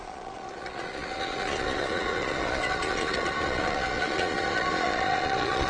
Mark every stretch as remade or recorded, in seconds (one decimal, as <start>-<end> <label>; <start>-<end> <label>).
0.0-5.7 remade